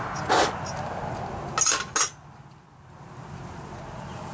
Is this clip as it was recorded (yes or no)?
yes